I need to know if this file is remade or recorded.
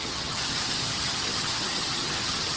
remade